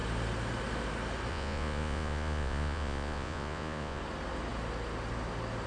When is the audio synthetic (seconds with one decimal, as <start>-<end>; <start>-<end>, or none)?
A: 1.3-4.0

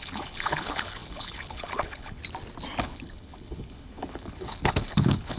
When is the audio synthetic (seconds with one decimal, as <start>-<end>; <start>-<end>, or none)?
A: 0.0-2.2; 2.8-5.4

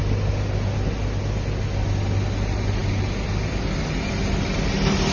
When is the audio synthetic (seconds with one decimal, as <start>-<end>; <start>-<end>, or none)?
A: none

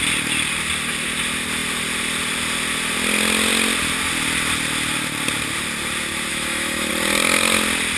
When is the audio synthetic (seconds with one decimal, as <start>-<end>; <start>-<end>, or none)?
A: 6.3-6.9

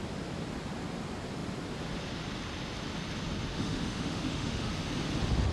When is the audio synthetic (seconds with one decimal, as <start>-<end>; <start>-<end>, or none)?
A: 3.5-4.7

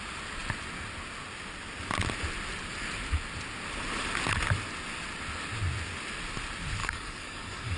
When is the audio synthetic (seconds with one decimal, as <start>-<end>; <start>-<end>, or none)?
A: 6.8-7.8

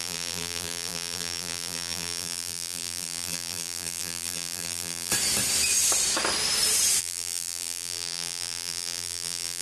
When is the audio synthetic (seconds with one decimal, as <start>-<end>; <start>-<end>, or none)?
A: 0.0-5.1; 7.0-9.6

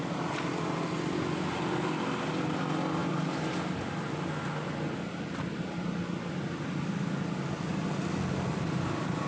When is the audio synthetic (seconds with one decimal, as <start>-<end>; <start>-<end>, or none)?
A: none